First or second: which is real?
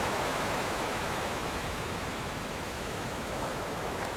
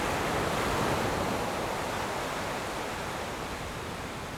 second